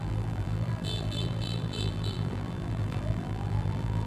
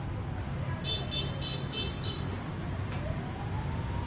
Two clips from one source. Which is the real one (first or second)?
second